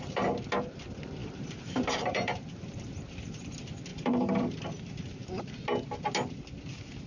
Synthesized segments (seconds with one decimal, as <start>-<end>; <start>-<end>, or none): 1.2-2.4; 3.9-5.4